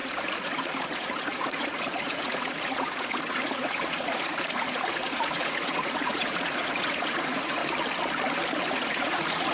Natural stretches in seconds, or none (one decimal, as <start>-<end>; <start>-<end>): 7.6-8.6

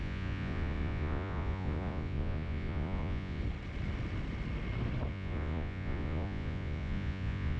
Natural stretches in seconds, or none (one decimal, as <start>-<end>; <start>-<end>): 3.4-5.1

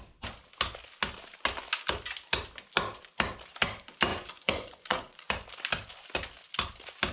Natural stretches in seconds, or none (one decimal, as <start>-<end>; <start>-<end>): 0.0-4.1; 5.3-7.1

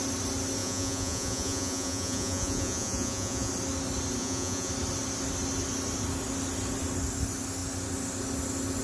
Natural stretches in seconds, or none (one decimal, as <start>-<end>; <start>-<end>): 0.0-0.6; 3.5-4.2; 4.7-8.8

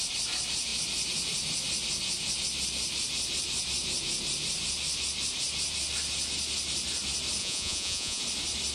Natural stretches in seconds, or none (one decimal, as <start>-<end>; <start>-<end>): 0.0-7.4; 8.2-8.7